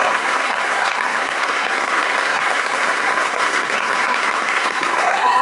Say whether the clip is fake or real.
fake